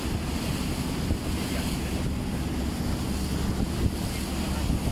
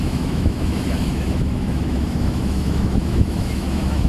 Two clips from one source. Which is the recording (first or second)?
first